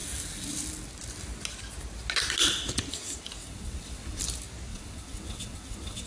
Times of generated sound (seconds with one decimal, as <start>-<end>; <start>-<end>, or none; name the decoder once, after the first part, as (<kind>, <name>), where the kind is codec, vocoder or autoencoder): 3.4-4.2 (vocoder, WaveNeXt); 4.7-6.1

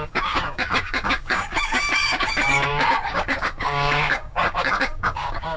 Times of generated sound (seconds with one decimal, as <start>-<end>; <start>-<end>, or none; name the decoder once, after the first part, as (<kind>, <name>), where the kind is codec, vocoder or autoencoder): 0.0-5.6 (codec, DAC)

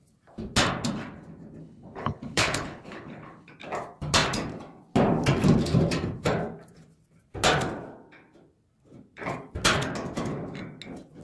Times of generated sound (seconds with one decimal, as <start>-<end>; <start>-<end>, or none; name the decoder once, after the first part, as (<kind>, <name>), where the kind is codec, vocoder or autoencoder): 1.6-3.5 (codec, HILCodec)

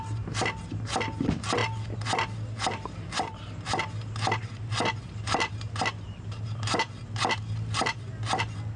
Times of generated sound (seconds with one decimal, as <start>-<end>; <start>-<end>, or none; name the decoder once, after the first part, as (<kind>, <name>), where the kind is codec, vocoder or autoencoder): none

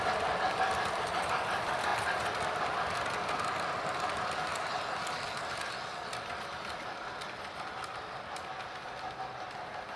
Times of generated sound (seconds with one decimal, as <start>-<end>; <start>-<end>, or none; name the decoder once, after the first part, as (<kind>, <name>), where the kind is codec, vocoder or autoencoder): none

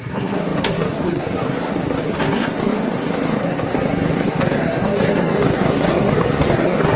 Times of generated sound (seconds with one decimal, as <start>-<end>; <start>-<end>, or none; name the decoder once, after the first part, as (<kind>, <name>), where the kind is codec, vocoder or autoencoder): 0.0-7.0 (codec, SNAC)